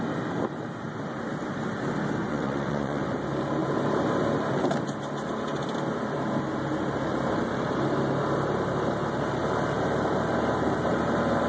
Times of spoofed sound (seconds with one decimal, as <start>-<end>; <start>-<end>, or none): 2.2-3.0